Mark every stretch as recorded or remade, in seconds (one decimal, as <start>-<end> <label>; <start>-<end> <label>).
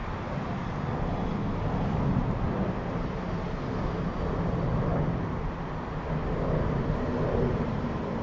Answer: 0.0-8.2 recorded